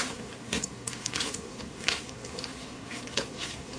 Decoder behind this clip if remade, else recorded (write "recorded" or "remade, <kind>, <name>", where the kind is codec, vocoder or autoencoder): remade, codec, SNAC